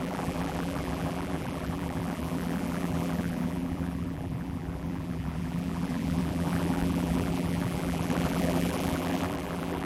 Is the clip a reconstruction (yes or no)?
yes